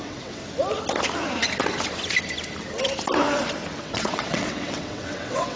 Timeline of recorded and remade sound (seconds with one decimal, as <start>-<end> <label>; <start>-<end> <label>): 0.0-0.4 remade; 0.4-3.8 recorded; 3.8-5.6 remade